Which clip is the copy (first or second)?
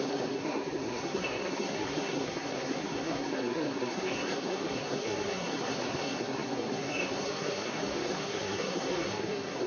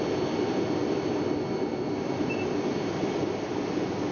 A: first